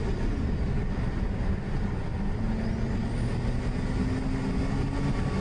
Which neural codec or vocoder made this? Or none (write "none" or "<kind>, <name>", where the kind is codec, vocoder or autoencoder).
none